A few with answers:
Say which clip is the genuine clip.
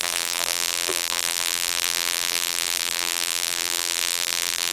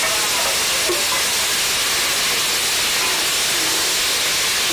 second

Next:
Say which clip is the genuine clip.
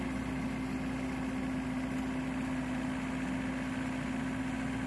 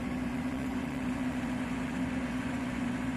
first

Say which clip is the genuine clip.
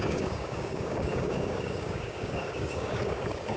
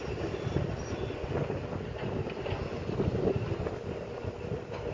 second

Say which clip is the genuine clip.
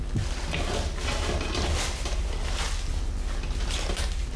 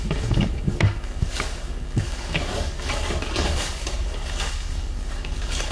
first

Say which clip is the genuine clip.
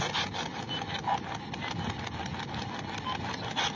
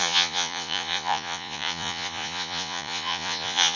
first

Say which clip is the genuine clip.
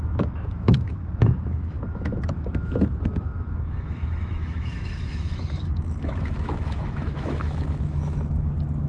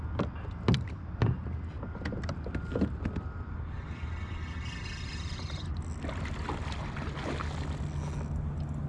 second